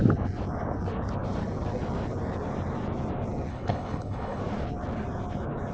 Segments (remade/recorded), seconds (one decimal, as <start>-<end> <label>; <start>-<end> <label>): 0.0-3.5 recorded; 3.5-4.4 remade; 4.4-5.7 recorded